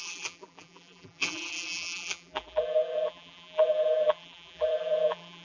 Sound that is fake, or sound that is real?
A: fake